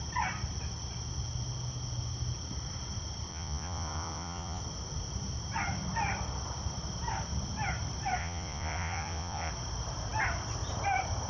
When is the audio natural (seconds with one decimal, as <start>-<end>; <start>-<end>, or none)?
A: 0.0-3.3; 4.6-8.2; 9.5-11.3